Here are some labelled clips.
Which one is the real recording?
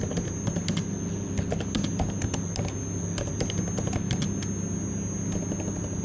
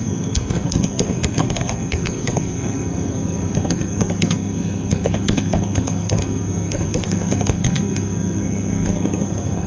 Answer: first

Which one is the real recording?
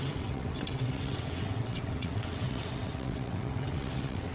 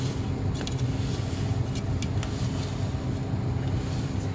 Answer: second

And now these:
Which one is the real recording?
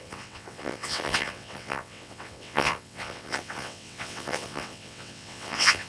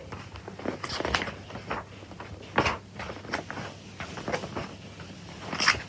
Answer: second